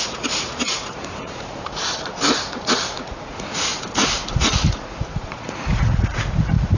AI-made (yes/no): yes